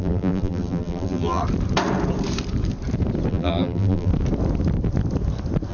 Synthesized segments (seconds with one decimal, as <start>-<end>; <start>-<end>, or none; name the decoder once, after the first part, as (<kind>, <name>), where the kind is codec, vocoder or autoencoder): 0.0-1.4 (vocoder, BigVGAN v2); 3.3-4.1